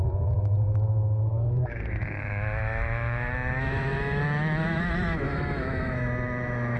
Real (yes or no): no